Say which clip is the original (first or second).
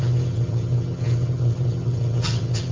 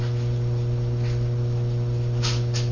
second